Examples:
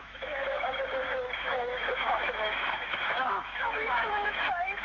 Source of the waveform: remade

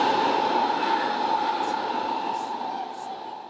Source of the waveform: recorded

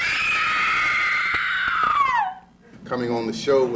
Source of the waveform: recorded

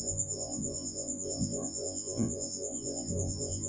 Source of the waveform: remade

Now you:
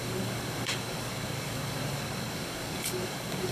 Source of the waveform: remade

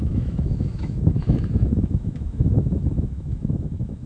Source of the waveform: remade